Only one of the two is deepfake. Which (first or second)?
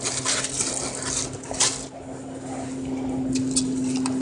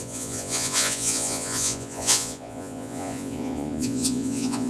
second